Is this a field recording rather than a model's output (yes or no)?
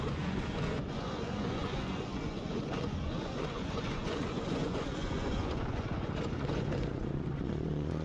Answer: no